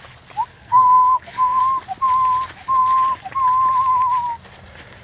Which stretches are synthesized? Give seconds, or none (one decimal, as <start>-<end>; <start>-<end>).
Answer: 0.5-1.6